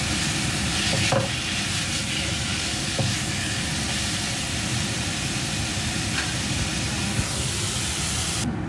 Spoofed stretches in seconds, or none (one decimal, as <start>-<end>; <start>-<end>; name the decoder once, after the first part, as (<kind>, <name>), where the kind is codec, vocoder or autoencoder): 2.5-3.7 (codec, DAC)